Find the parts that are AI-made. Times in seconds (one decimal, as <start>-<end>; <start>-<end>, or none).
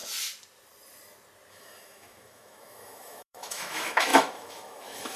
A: 1.5-5.2